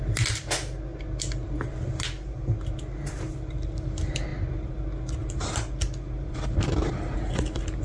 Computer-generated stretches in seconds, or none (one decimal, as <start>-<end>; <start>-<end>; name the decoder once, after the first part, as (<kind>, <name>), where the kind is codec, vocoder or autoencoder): none